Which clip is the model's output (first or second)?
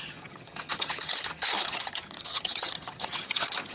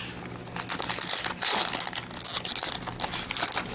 first